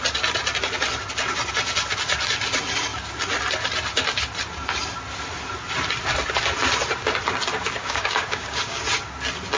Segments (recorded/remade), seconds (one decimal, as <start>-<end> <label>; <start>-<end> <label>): 0.0-7.8 recorded; 7.8-8.8 remade; 8.8-9.6 recorded